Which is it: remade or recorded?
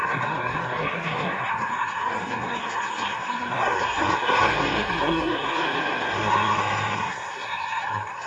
remade